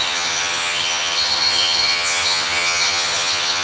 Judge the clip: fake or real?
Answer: fake